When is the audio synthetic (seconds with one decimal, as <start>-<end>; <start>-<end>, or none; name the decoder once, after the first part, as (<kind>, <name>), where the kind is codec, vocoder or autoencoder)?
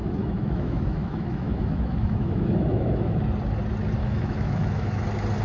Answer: 0.0-3.2 (autoencoder, DAC-VAE); 4.0-5.0